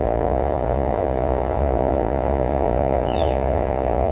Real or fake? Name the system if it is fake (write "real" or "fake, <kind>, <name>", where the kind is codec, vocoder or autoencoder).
fake, vocoder, Vocos